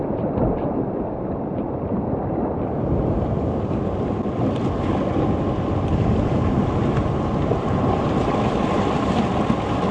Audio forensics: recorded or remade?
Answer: recorded